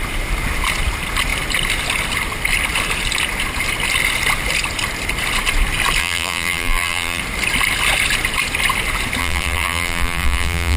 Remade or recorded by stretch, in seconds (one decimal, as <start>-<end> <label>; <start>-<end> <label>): 0.0-6.0 recorded; 6.0-7.2 remade; 7.2-9.2 recorded; 9.2-10.8 remade